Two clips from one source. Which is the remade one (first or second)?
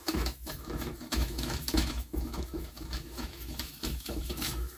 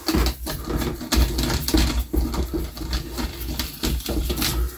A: first